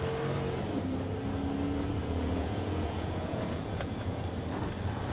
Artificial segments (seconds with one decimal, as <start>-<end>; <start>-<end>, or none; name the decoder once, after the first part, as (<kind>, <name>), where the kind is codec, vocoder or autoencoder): 2.0-4.2 (vocoder, Vocos)